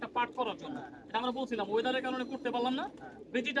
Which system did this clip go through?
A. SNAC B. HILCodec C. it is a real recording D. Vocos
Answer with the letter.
C